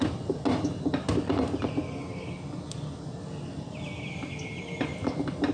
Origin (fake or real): real